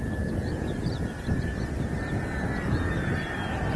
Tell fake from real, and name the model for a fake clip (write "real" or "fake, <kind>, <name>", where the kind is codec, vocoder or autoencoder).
real